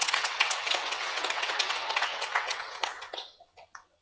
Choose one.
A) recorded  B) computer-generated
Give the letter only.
B